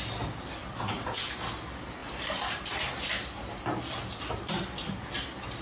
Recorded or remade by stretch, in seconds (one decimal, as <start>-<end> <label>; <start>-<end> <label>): 0.0-2.0 recorded; 2.0-5.6 remade